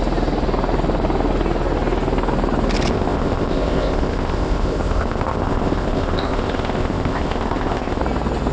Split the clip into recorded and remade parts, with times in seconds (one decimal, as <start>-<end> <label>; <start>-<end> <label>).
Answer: 0.0-2.9 recorded; 2.9-8.0 remade; 8.0-8.5 recorded